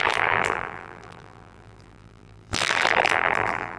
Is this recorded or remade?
remade